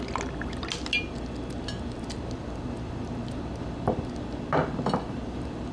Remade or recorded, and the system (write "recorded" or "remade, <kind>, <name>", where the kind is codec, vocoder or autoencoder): recorded